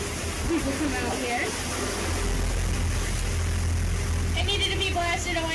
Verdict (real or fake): real